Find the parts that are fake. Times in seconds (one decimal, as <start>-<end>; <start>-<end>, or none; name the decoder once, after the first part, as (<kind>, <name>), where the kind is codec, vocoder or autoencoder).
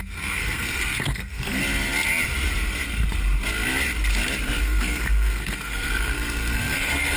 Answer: 0.0-1.6 (codec, SNAC); 4.6-7.2